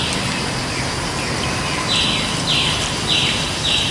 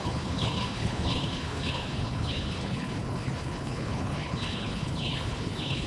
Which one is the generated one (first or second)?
second